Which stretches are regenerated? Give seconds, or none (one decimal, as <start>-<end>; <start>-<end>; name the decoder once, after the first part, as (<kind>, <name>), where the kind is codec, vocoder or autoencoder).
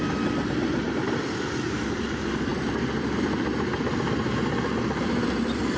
1.1-4.4 (vocoder, BigVGAN v2); 5.0-5.8